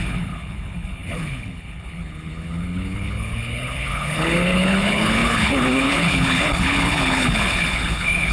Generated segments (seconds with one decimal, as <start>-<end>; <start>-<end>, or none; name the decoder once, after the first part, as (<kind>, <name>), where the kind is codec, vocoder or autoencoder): 0.0-8.3 (codec, HILCodec)